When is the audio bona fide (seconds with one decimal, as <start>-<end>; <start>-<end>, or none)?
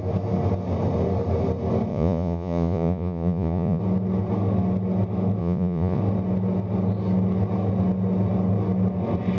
0.0-1.9; 3.8-5.4; 6.0-9.4